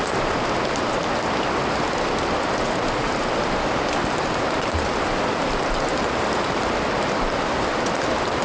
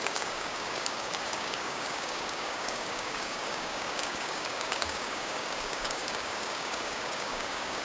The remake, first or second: second